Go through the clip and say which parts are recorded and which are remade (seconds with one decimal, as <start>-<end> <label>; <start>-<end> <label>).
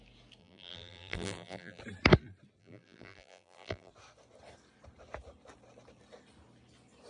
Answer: 0.0-0.4 recorded; 0.4-1.8 remade; 1.8-2.6 recorded; 2.6-3.9 remade; 3.9-7.1 recorded